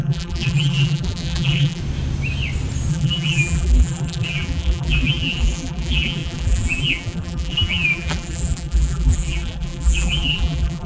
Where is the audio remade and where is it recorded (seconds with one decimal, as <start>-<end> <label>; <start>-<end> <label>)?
0.0-1.8 remade; 1.8-2.9 recorded; 2.9-10.9 remade